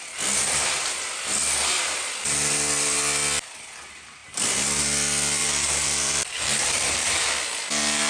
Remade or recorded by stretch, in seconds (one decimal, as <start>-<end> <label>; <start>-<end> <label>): 0.0-5.4 recorded; 5.4-7.3 remade; 7.3-8.1 recorded